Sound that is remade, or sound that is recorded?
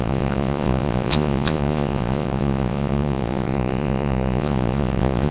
remade